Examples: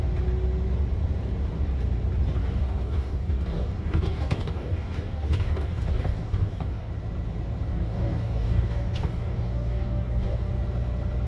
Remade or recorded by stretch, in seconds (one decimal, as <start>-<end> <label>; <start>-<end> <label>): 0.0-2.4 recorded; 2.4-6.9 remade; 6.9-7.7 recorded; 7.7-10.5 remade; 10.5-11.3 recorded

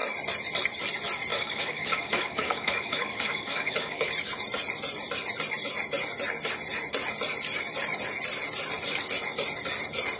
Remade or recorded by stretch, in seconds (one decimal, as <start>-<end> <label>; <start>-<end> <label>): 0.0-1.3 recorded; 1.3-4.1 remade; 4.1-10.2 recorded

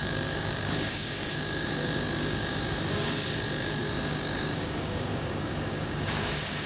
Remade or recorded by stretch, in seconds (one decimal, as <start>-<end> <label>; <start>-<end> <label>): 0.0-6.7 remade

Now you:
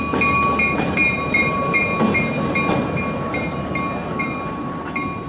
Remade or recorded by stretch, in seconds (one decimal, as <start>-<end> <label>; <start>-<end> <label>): 0.0-5.3 recorded

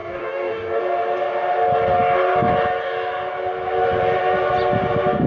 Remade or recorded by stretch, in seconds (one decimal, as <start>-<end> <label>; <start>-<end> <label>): 0.0-0.8 remade; 0.8-5.3 recorded

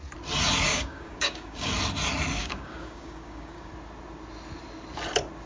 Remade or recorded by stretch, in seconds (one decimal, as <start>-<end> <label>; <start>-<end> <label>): 0.0-0.7 recorded; 0.7-1.7 remade; 1.7-2.4 recorded; 2.4-3.7 remade; 3.7-5.5 recorded

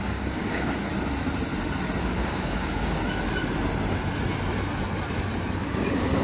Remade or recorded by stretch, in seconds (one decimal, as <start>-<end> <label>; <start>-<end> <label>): 0.0-0.8 remade; 0.8-2.0 recorded; 2.0-3.0 remade; 3.0-5.6 recorded; 5.6-6.2 remade

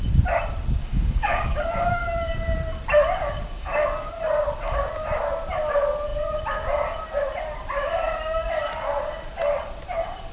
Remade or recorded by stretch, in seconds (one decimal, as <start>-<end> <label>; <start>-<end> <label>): 0.0-0.8 recorded; 0.8-2.0 remade; 2.0-3.6 recorded; 3.6-4.1 remade; 4.1-10.3 recorded